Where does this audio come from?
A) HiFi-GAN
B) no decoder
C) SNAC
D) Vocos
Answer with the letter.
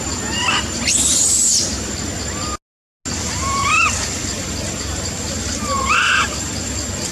B